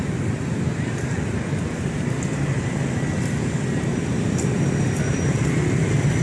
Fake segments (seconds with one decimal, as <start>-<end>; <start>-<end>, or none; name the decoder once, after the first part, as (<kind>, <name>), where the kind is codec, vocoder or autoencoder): none